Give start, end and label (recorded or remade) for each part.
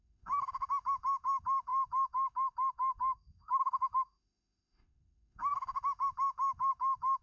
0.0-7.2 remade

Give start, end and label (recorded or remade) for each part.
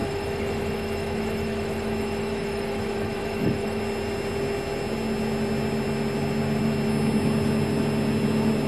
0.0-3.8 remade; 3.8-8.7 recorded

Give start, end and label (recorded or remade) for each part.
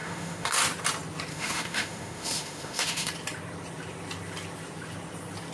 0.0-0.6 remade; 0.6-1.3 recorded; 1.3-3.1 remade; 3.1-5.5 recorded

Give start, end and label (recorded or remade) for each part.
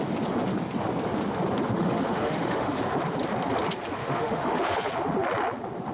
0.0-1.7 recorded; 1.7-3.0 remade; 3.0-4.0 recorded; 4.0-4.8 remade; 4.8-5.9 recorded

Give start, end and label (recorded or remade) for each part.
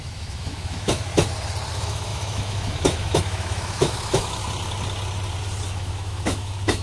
0.0-1.1 remade; 1.1-1.7 recorded; 1.7-4.4 remade; 4.4-5.7 recorded; 5.7-6.8 remade